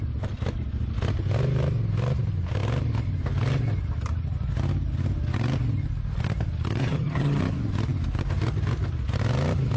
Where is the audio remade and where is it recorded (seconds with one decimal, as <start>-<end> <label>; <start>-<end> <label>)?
0.0-6.8 recorded; 6.8-7.4 remade; 7.4-9.8 recorded